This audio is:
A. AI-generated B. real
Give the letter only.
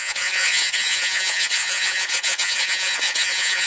A